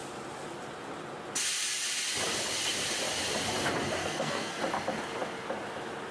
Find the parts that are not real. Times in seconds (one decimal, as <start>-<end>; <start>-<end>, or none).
4.0-4.6